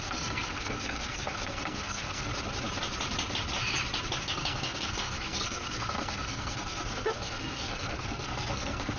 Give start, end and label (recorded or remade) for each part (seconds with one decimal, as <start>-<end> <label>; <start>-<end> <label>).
0.0-2.3 remade; 2.3-4.2 recorded; 4.2-9.0 remade